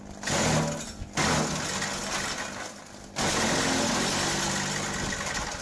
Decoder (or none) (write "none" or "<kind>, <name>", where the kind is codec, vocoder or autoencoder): none